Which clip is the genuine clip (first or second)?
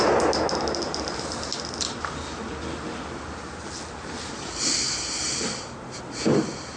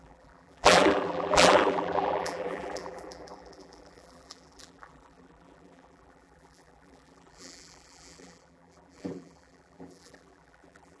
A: first